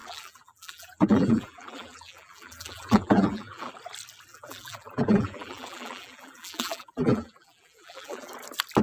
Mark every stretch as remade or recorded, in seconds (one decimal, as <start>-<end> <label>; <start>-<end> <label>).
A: 0.0-3.7 remade; 3.7-4.3 recorded; 4.3-8.3 remade; 8.3-8.8 recorded